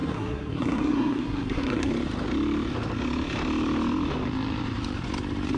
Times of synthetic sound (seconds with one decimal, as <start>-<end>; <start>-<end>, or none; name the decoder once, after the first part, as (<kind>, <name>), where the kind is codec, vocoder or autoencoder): 0.0-1.9 (codec, SNAC)